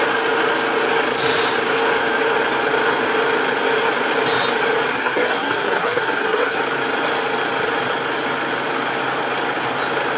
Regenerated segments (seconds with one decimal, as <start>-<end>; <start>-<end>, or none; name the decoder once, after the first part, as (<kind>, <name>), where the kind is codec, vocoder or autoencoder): 4.9-6.6 (codec, SNAC)